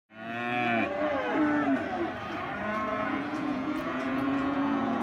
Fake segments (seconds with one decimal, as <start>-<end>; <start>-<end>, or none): 2.6-5.0